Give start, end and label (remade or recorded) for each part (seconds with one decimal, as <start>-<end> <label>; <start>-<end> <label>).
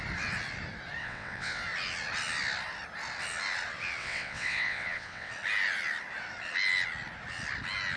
0.0-1.0 recorded; 1.0-1.6 remade; 1.6-4.0 recorded; 4.0-5.3 remade; 5.3-8.0 recorded